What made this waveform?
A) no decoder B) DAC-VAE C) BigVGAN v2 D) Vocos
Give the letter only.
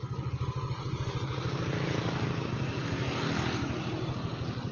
A